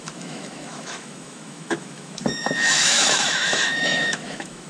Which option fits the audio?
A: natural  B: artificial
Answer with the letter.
B